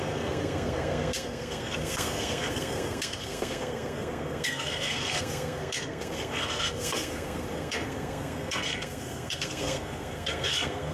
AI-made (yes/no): yes